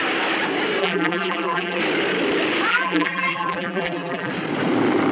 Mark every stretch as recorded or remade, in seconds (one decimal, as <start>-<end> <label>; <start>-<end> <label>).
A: 0.0-0.8 recorded; 0.8-1.8 remade; 1.8-2.7 recorded; 2.7-4.3 remade; 4.3-5.1 recorded